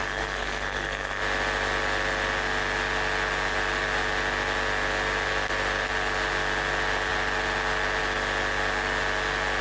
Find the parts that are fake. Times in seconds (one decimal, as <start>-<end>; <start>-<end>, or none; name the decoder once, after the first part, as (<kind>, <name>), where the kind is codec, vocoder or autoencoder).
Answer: 0.0-1.2 (codec, SNAC)